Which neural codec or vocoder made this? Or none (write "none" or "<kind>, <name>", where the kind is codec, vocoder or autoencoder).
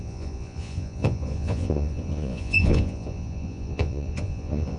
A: vocoder, Vocos